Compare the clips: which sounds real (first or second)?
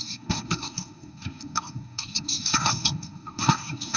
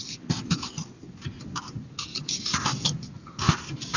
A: second